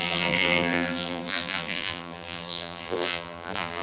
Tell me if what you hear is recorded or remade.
remade